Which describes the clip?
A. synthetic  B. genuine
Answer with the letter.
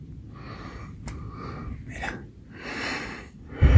B